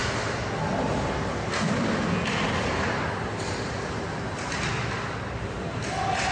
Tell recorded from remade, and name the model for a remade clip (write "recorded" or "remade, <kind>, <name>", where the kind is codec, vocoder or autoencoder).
recorded